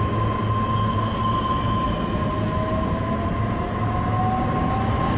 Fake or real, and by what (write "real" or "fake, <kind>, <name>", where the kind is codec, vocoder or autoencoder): real